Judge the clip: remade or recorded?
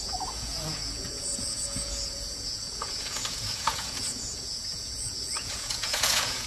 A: remade